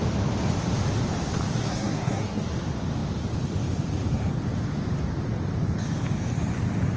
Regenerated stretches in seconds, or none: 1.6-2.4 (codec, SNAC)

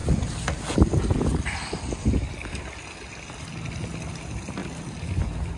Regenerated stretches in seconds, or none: none

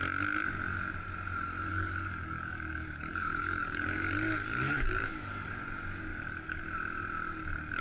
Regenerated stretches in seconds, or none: 1.7-5.5 (codec, DAC); 6.1-6.6

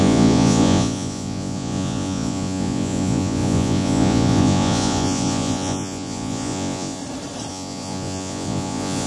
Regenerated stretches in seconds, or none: 0.0-7.0 (vocoder, Vocos); 7.5-9.1

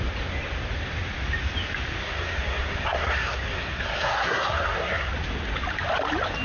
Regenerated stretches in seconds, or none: 2.0-5.1 (codec, SNAC)